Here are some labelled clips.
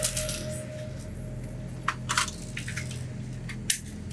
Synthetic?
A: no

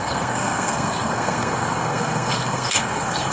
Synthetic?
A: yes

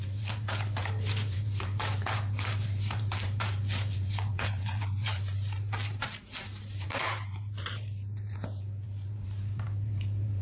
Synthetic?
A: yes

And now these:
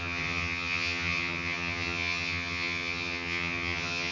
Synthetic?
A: yes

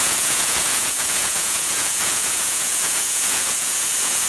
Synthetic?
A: yes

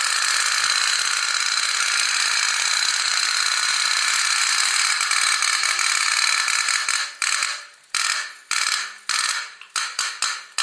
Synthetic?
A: no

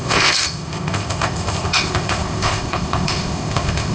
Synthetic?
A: yes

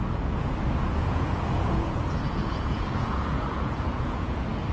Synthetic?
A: yes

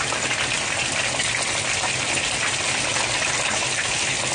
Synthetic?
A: no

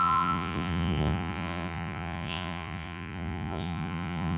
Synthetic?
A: yes